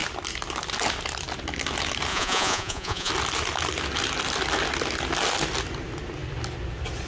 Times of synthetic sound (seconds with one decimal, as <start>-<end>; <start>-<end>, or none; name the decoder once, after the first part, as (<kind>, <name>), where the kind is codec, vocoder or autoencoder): 2.1-3.1 (vocoder, Vocos)